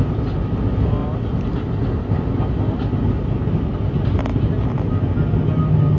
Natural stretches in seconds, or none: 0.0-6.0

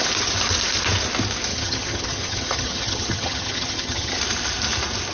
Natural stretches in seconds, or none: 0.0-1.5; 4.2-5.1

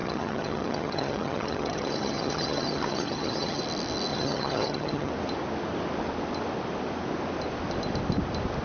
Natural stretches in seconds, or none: 3.6-4.1; 5.1-8.6